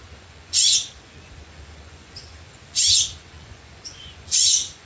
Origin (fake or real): fake